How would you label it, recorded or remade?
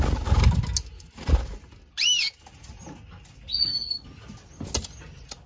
recorded